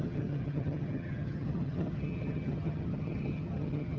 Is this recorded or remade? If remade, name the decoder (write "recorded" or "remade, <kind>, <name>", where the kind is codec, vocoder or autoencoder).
remade, vocoder, HiFi-GAN